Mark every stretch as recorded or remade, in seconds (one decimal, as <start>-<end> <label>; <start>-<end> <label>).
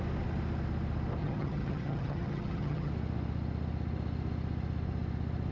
0.0-1.2 recorded; 1.2-2.9 remade; 2.9-5.5 recorded